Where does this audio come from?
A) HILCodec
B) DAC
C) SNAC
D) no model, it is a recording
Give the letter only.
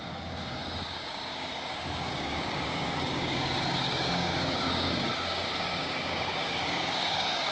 B